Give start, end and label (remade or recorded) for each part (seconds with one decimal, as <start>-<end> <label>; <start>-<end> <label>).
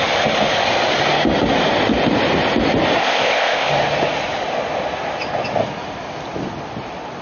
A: 0.0-3.0 recorded; 3.0-3.7 remade; 3.7-7.2 recorded